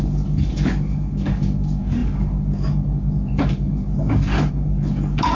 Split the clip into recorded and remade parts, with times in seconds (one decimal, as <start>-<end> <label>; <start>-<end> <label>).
0.0-5.3 remade